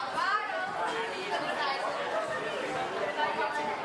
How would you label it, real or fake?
real